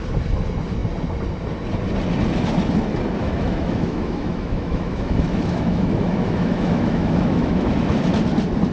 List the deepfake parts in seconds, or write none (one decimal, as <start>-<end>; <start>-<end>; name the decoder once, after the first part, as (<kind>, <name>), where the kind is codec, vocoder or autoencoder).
3.2-7.7 (autoencoder, DAC-VAE)

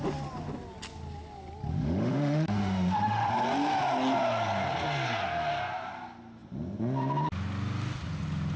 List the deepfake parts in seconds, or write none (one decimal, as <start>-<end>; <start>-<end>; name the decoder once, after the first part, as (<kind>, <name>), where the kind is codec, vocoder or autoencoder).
1.7-3.3 (autoencoder, DAC-VAE)

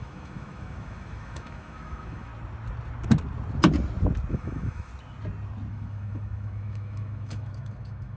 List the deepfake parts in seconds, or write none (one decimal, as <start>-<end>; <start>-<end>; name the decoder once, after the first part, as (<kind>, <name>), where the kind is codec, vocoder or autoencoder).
0.0-2.3 (autoencoder, DAC-VAE); 4.3-4.9; 5.7-8.2

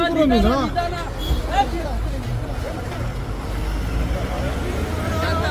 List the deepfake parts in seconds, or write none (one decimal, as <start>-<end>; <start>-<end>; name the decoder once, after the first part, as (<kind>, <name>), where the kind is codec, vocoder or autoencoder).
none

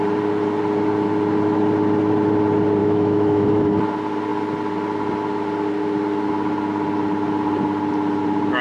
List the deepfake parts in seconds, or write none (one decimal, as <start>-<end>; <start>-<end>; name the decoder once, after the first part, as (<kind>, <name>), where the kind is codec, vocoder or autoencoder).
2.8-3.8 (autoencoder, DAC-VAE)

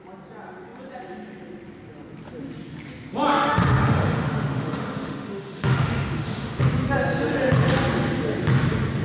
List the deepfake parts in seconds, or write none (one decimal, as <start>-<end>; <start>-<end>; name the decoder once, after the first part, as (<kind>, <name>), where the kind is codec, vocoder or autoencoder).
3.3-6.6 (autoencoder, DAC-VAE)

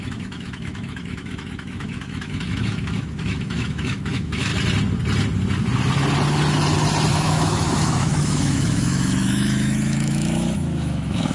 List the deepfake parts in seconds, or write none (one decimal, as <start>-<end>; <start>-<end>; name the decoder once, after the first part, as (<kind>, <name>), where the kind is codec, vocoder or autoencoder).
0.0-4.5 (autoencoder, DAC-VAE); 7.1-11.3

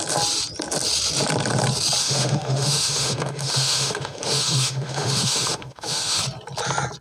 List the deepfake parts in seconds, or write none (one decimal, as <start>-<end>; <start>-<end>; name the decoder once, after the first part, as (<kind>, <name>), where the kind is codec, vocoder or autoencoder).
2.0-6.2 (autoencoder, DAC-VAE)